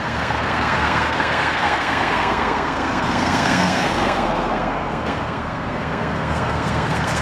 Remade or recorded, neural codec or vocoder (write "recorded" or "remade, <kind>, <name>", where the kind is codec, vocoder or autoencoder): remade, codec, SNAC